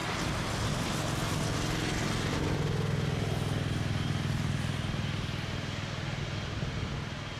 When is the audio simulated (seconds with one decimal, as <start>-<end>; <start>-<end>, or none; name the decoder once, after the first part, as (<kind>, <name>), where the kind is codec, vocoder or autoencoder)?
none